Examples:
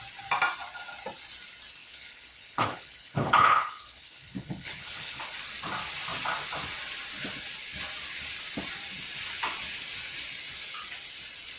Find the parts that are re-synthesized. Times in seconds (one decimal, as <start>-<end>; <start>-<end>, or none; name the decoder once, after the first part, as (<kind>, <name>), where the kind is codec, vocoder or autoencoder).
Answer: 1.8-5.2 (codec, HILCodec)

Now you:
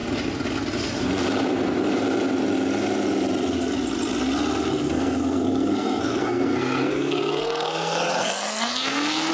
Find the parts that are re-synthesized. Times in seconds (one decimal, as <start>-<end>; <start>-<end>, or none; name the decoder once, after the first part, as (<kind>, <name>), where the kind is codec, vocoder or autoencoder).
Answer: 4.7-9.3 (codec, SNAC)

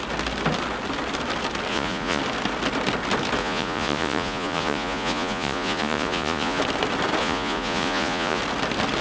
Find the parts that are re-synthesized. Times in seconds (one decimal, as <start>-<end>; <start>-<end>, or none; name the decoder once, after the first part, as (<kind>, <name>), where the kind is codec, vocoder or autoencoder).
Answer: 1.7-2.2 (vocoder, Vocos); 3.4-6.6; 7.2-8.4

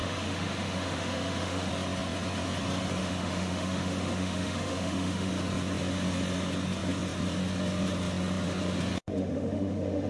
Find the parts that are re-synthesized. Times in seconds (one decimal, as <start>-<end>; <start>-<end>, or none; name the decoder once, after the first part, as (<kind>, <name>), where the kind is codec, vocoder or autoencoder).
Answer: 0.0-1.7 (autoencoder, DAC-VAE); 3.0-5.3; 8.9-10.1

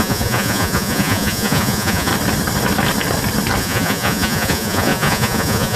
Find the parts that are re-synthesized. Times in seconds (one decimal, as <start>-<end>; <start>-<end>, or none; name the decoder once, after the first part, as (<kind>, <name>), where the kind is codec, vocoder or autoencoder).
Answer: 0.0-2.1 (vocoder, Vocos); 3.6-5.8

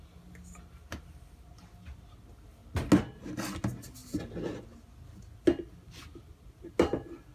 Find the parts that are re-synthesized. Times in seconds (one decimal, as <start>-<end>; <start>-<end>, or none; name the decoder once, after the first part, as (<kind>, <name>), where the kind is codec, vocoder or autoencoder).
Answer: none